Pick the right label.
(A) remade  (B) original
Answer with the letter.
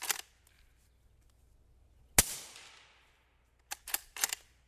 B